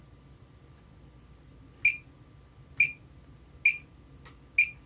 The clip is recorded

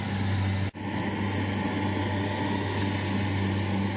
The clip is recorded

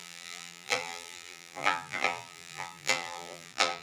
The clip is remade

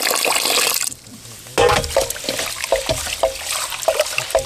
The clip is recorded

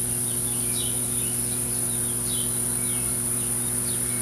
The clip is recorded